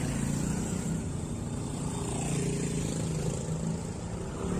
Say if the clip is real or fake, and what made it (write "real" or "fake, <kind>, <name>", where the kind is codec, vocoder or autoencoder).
real